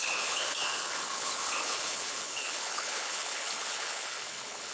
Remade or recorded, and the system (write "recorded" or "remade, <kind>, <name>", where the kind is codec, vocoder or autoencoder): remade, codec, HILCodec